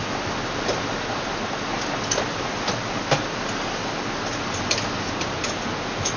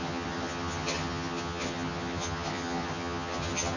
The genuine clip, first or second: first